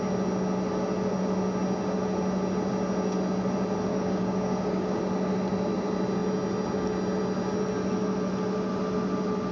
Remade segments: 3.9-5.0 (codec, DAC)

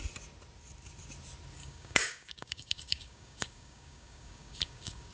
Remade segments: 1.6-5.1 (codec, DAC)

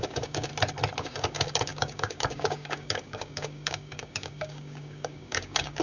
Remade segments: 0.0-0.5 (codec, DAC); 1.0-5.8

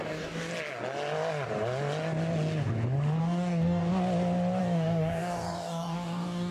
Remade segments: 0.0-0.5 (codec, DAC); 3.2-3.9; 4.6-6.5